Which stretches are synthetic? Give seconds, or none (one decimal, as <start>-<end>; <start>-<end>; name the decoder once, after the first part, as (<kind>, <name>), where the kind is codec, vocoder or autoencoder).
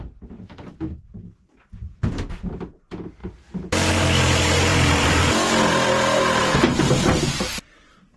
4.7-6.4 (vocoder, BigVGAN v2)